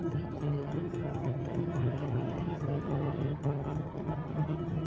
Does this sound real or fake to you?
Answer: fake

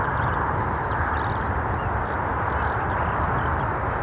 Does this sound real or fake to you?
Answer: real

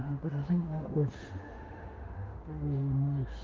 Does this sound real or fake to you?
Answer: fake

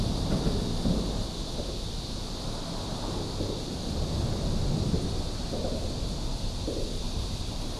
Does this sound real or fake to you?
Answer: real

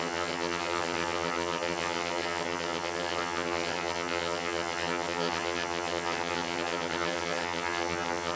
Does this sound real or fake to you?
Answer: fake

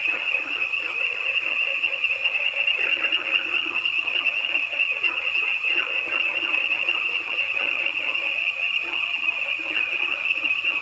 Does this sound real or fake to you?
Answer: fake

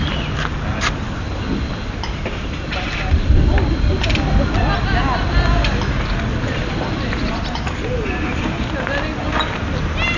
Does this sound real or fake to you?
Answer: real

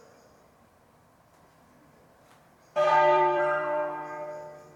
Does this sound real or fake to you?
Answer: fake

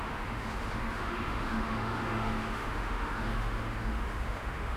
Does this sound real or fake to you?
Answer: fake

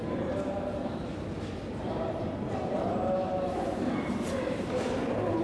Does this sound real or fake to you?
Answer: real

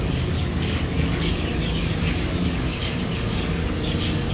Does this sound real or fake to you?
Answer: fake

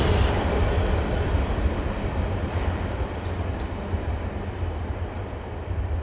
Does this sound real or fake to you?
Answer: real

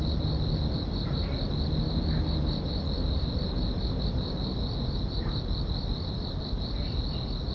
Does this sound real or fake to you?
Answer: real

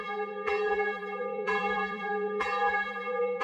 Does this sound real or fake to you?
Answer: fake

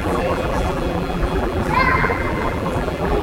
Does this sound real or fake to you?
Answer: fake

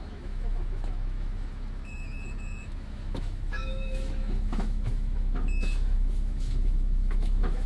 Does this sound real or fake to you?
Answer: fake